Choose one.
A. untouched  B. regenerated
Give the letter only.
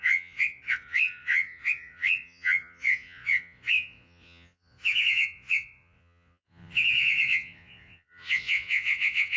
B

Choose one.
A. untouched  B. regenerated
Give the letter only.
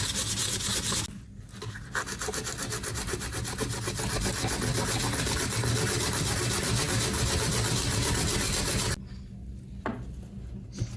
A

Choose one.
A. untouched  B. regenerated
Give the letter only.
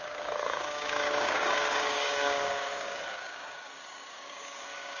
B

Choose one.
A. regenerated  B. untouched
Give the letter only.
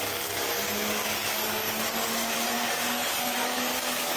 A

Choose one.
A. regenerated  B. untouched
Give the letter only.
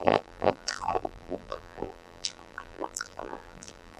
A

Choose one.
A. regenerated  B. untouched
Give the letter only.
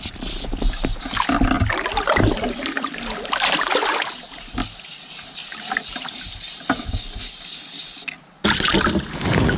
B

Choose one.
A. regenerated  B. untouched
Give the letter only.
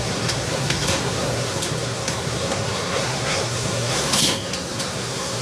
A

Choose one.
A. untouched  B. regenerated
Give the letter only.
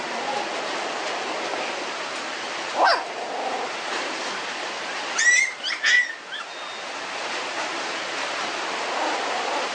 A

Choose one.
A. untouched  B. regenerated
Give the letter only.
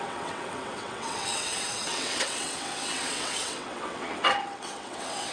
B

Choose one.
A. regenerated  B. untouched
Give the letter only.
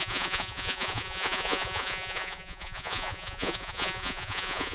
A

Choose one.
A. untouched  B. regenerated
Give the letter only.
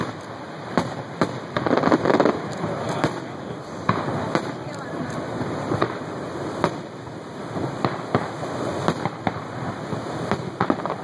B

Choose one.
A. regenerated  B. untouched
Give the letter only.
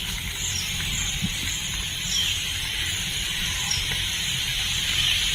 A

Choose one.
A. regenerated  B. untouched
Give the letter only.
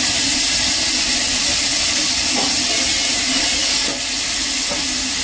B